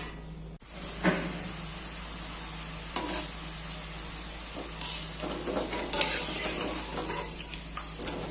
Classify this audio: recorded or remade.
recorded